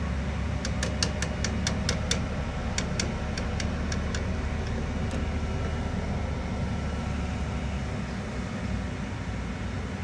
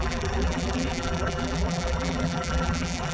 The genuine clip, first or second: first